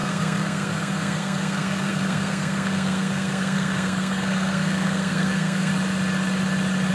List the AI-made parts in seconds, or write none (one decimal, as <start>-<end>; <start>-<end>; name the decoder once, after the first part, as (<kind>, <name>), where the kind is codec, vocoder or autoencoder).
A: 0.0-5.7 (codec, SNAC)